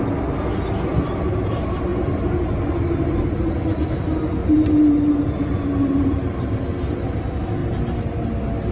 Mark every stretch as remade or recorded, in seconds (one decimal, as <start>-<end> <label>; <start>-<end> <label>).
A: 0.0-4.4 recorded; 4.4-6.6 remade; 6.6-8.7 recorded